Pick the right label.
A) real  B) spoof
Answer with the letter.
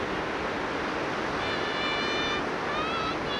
A